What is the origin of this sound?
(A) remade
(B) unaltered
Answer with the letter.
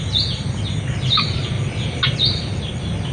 B